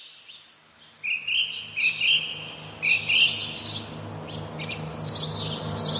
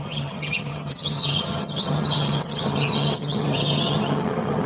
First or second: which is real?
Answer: first